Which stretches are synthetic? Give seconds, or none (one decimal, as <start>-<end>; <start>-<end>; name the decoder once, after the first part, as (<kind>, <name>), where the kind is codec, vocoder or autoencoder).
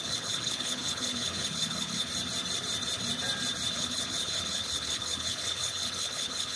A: 0.0-2.1 (codec, HILCodec); 3.7-6.6